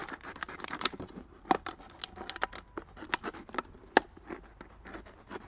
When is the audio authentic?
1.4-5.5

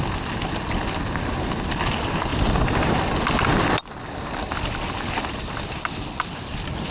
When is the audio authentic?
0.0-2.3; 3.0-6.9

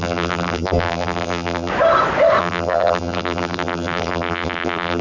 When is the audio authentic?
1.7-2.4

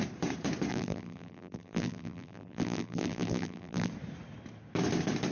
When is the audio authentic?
0.0-0.7; 3.9-5.3